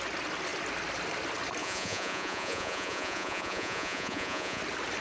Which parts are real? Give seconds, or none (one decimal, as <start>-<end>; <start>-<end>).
0.0-1.6; 4.6-5.0